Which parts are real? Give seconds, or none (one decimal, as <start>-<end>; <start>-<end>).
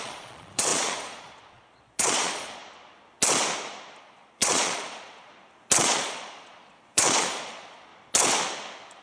2.6-4.0; 5.3-5.8; 7.9-9.0